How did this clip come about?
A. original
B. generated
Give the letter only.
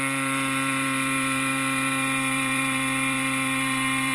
B